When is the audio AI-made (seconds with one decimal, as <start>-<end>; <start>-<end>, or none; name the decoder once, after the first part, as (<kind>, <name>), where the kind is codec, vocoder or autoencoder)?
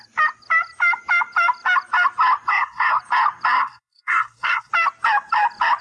2.5-3.0 (codec, SNAC); 3.5-4.7